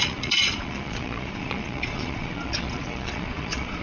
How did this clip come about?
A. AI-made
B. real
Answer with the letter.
A